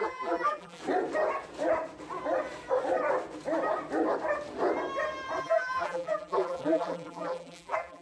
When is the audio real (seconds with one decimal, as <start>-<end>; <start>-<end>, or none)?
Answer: 0.8-5.4